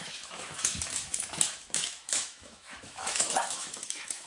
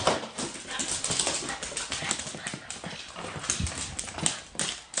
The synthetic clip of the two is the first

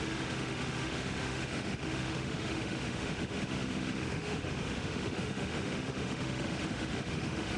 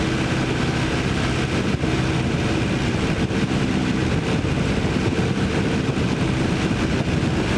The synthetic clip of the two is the first